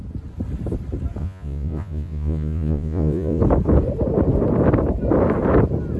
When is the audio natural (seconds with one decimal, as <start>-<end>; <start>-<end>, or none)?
0.0-1.2; 3.4-6.0